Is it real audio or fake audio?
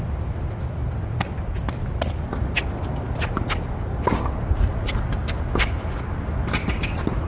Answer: real